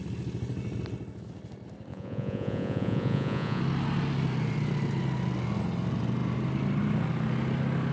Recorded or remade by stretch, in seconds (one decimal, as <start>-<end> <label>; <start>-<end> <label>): 0.0-1.9 recorded; 1.9-3.6 remade; 3.6-7.9 recorded